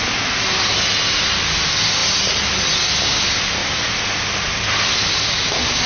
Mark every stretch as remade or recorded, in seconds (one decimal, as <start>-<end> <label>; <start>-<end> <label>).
0.0-5.9 recorded